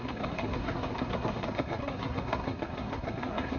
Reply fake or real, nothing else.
fake